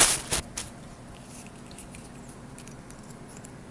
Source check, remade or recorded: recorded